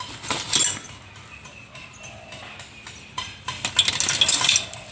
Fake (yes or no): no